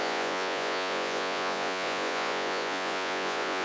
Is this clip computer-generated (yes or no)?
yes